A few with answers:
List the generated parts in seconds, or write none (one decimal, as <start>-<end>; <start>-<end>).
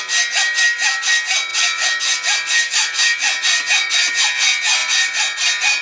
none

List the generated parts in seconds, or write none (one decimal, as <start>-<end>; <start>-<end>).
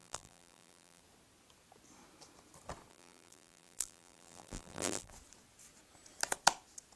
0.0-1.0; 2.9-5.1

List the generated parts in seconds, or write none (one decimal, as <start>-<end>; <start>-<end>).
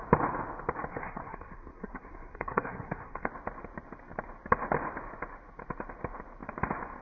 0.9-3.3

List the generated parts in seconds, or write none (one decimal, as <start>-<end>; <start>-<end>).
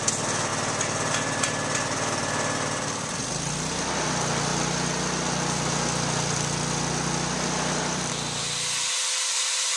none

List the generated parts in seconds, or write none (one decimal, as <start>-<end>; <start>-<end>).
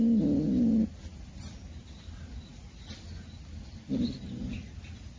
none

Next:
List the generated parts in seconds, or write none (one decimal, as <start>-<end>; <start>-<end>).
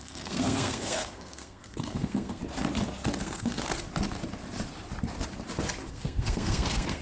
0.0-2.4; 3.2-3.7; 5.9-7.0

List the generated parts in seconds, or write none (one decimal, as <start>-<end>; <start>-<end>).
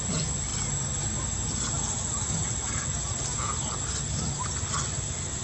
none